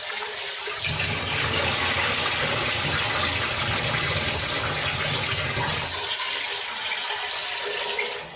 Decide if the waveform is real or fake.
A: real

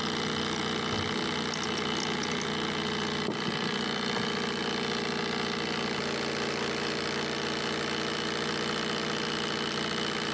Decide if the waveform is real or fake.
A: real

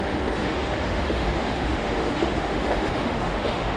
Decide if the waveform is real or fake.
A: fake